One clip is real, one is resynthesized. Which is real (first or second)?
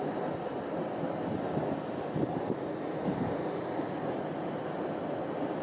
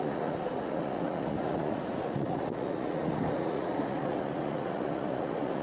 first